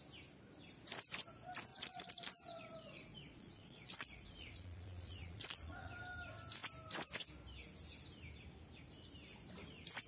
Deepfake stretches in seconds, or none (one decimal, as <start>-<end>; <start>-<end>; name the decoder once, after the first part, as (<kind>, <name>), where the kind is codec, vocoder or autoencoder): 1.7-5.9 (vocoder, Vocos)